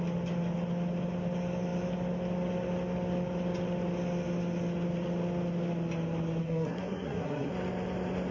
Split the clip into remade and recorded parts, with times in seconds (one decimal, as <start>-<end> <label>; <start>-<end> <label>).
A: 0.0-6.4 recorded; 6.4-7.5 remade; 7.5-8.3 recorded

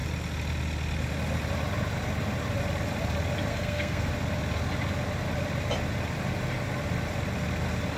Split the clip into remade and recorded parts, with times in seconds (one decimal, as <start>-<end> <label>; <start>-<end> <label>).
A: 0.0-3.5 recorded; 3.5-4.1 remade; 4.1-8.0 recorded

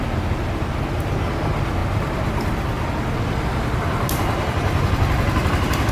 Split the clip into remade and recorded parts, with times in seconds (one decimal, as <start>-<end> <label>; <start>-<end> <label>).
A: 0.0-5.9 recorded

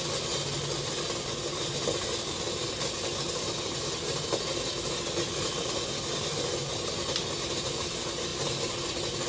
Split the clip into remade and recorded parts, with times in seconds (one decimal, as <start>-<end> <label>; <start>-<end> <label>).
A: 0.0-9.3 recorded